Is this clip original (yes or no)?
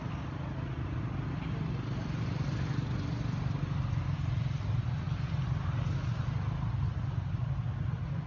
yes